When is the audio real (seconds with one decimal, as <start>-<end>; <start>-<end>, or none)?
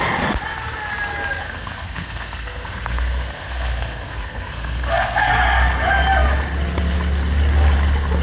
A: 0.0-1.4; 5.3-8.2